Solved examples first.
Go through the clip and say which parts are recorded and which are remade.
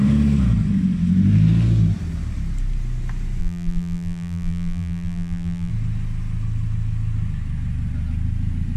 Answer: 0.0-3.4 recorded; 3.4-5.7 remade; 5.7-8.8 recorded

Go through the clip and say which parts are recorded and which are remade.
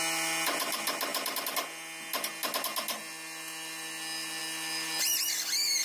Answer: 0.0-5.8 recorded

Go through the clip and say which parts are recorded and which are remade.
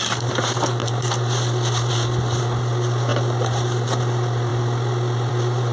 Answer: 0.0-0.8 recorded; 0.8-2.4 remade; 2.4-3.1 recorded; 3.1-4.0 remade; 4.0-4.5 recorded; 4.5-5.3 remade; 5.3-5.7 recorded